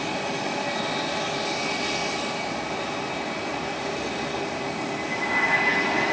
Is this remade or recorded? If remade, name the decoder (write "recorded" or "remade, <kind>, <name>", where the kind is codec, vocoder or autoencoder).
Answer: recorded